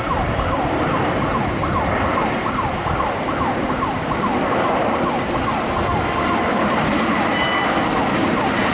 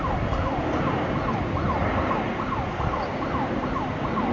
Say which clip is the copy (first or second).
first